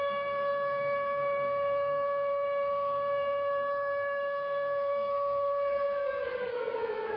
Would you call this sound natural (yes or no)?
no